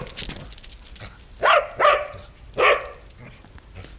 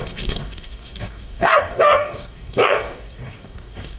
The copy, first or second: second